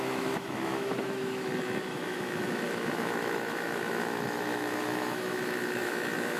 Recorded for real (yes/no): no